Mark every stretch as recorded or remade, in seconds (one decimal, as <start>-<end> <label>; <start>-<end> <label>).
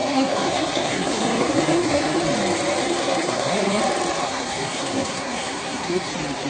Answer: 0.0-2.2 remade; 2.2-2.8 recorded; 2.8-3.8 remade; 3.8-4.2 recorded; 4.2-6.1 remade; 6.1-6.5 recorded